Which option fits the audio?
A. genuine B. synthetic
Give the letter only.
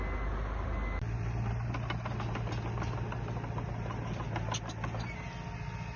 A